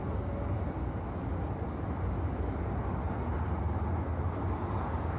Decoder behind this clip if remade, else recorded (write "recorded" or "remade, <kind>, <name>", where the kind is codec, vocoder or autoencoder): recorded